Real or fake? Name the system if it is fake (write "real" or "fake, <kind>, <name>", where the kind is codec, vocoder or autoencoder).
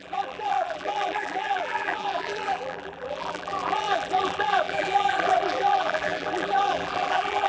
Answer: fake, vocoder, BigVGAN v2